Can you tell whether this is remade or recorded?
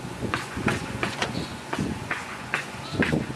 remade